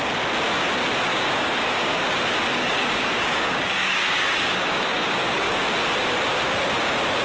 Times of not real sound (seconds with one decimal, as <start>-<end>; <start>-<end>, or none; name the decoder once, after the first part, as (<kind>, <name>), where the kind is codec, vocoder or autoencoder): 1.1-2.0 (codec, DAC); 2.5-5.6